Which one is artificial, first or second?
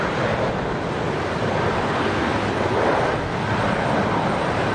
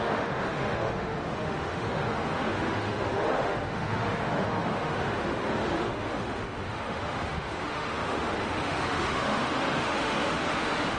second